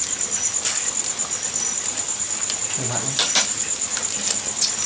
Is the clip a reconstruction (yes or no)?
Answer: no